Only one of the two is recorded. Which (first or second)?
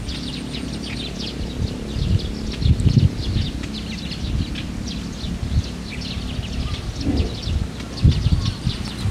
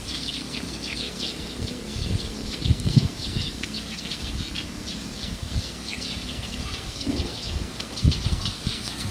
first